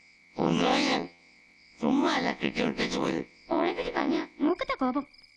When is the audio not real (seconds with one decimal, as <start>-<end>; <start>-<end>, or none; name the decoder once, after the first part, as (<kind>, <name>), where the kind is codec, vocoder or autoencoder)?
0.0-4.5 (vocoder, WaveNeXt)